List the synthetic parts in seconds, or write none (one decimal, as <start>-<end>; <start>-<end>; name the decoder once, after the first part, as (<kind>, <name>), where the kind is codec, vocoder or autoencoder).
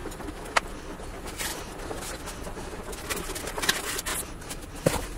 0.0-0.8 (vocoder, BigVGAN v2)